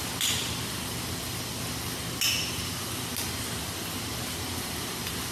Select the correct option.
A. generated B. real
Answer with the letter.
B